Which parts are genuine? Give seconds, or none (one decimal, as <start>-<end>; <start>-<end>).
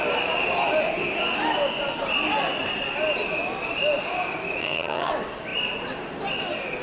0.0-4.6; 5.1-6.8